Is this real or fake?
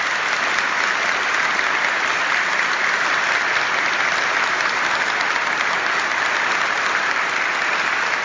real